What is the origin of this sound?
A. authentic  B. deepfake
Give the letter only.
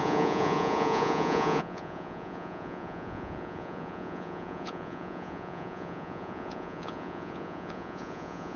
B